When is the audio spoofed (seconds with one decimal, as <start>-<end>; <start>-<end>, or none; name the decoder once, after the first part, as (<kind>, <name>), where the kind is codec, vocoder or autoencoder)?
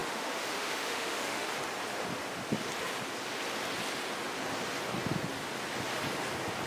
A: 0.0-1.5 (autoencoder, DAC-VAE)